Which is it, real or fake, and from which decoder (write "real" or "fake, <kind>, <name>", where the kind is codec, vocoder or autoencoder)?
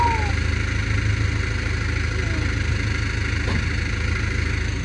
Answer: real